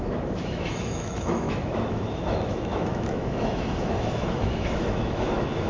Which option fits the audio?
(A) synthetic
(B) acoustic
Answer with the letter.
A